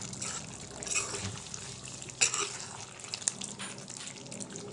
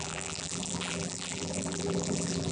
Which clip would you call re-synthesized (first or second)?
second